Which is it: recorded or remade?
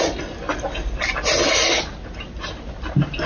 recorded